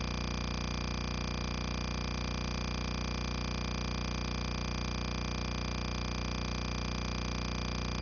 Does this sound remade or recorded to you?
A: recorded